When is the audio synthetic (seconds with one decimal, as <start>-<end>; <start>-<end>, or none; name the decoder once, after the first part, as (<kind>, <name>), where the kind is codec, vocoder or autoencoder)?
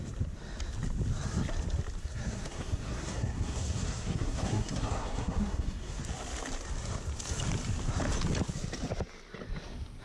2.0-6.0 (codec, SNAC)